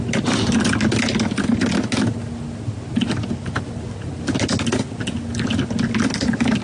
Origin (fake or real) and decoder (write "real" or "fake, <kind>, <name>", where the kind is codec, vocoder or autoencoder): real